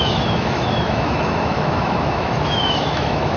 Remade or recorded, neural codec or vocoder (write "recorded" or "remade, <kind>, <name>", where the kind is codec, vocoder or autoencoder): remade, autoencoder, DAC-VAE